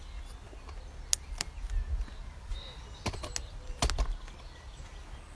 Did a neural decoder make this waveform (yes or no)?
no